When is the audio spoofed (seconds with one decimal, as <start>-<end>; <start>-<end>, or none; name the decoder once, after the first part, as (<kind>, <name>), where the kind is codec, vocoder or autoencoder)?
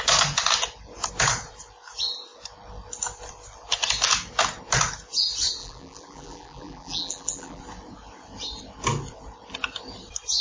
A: 5.6-7.6 (vocoder, BigVGAN v2)